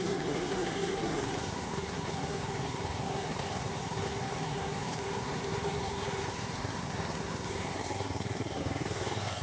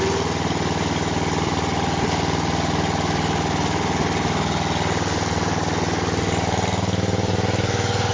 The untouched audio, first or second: second